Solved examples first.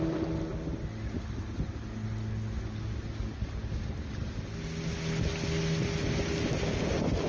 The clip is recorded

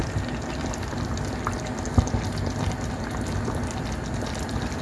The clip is recorded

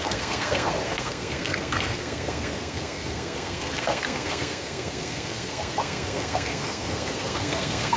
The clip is remade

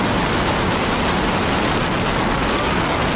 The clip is recorded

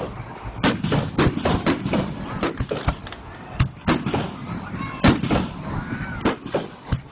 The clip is recorded